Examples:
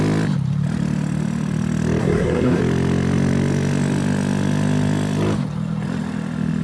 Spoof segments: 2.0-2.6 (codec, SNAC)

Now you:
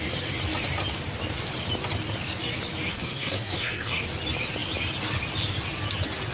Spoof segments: 2.9-4.0 (codec, SNAC)

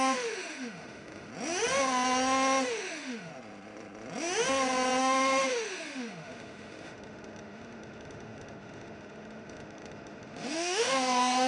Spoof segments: 0.0-1.3 (autoencoder, DAC-VAE); 2.7-3.3; 5.0-11.5

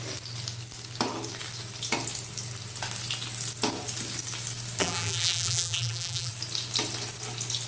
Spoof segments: 4.8-6.3 (vocoder, BigVGAN v2)

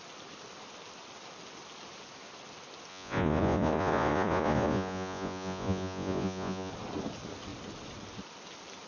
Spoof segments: 2.9-6.7 (vocoder, Vocos)

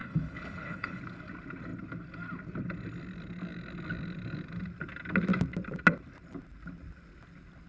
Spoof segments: 0.0-1.0 (codec, HILCodec)